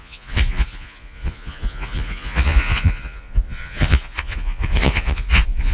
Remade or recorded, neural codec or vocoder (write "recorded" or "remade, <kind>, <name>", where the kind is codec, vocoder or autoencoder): remade, vocoder, Vocos